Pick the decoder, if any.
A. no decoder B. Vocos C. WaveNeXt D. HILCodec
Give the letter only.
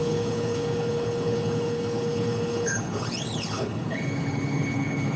D